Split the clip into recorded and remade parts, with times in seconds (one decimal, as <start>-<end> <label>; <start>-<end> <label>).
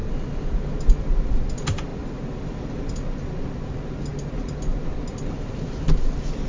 0.0-6.5 recorded